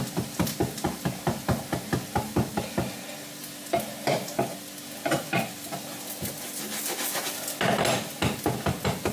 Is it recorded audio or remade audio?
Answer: recorded